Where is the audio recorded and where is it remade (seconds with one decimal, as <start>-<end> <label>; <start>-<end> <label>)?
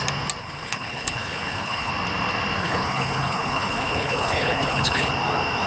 0.0-0.4 recorded; 0.4-1.9 remade; 1.9-2.6 recorded; 2.6-5.1 remade; 5.1-5.7 recorded